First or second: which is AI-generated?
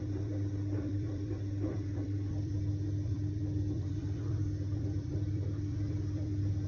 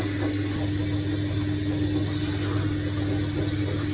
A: first